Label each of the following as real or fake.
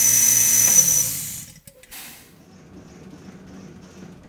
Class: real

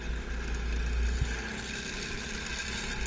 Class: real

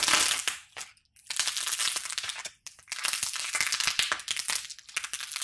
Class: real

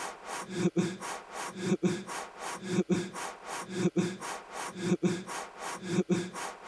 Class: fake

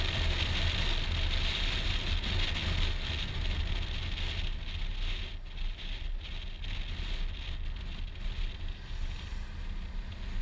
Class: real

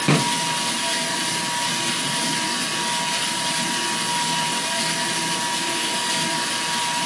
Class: real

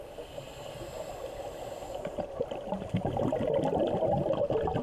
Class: real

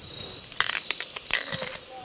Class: fake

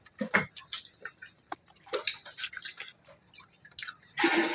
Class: real